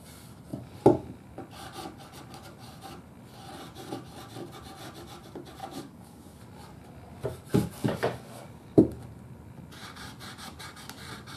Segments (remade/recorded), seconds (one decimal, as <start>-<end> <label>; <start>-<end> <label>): 0.0-5.6 recorded; 5.6-6.4 remade; 6.4-7.8 recorded; 7.8-8.8 remade; 8.8-11.4 recorded